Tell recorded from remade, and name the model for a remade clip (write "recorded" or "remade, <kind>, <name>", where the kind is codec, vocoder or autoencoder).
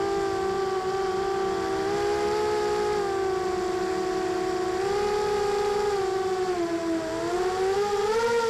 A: recorded